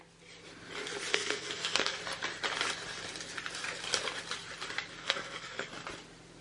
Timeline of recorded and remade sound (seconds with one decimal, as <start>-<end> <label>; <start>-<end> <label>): 0.0-1.1 recorded; 1.1-2.0 remade; 2.0-5.0 recorded; 5.0-5.7 remade; 5.7-6.4 recorded